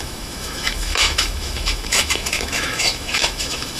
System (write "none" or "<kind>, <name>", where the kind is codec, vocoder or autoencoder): autoencoder, DAC-VAE